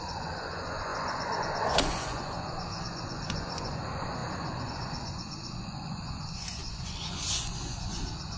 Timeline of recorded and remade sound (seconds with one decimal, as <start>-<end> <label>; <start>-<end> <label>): 0.0-8.4 remade